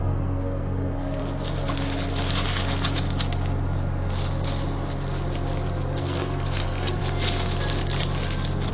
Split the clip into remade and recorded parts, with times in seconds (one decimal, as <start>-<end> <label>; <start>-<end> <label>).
0.0-1.2 remade; 1.2-6.0 recorded; 6.0-7.0 remade; 7.0-8.7 recorded